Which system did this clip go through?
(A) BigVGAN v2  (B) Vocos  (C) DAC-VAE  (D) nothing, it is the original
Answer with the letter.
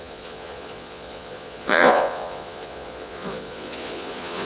B